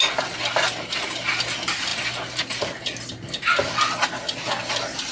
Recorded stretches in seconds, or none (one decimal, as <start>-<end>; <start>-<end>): 0.0-5.1